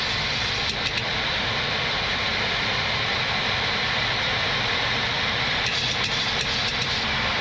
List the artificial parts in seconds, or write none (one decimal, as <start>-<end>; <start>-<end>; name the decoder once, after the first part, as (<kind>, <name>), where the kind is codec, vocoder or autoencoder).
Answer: 0.0-2.3 (vocoder, BigVGAN v2); 3.1-7.4